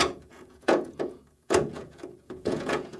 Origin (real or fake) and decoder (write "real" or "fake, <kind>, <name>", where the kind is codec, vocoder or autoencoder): fake, vocoder, Vocos